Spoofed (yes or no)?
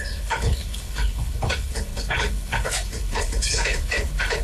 yes